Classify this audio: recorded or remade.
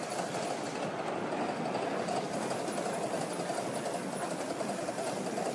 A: recorded